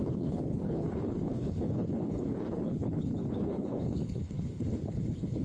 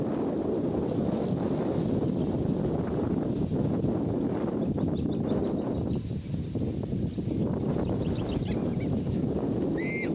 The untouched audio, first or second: second